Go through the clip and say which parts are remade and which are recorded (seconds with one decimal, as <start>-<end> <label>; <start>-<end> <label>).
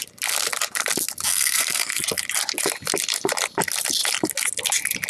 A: 0.0-1.3 recorded; 1.3-2.0 remade; 2.0-5.1 recorded